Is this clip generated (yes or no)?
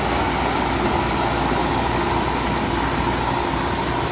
no